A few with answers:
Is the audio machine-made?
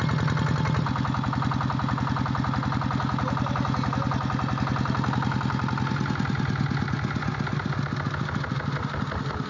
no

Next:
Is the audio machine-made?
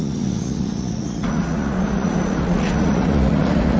yes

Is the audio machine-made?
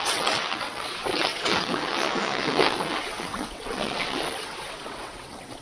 yes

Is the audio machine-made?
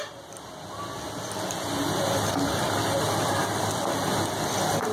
no